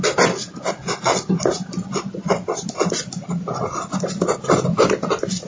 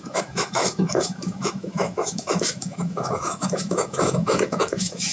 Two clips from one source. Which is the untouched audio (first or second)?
first